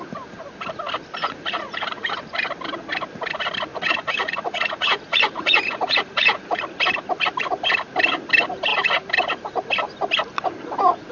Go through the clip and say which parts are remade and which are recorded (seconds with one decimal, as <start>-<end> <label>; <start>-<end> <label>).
0.0-1.2 recorded; 1.2-2.3 remade; 2.3-3.7 recorded; 3.7-6.6 remade; 6.6-11.1 recorded